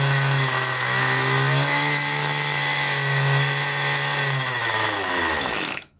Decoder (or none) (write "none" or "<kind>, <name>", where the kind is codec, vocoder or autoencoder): autoencoder, DAC-VAE